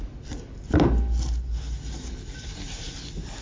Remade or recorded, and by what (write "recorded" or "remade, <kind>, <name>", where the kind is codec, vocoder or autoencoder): recorded